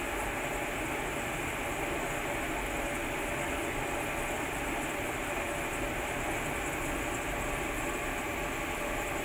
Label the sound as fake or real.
real